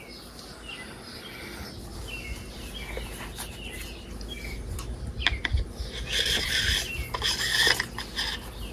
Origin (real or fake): real